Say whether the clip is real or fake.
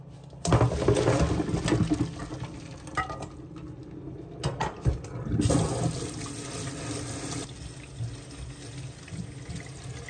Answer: real